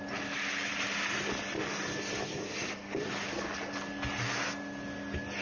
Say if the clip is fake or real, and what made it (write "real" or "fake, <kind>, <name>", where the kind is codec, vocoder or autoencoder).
real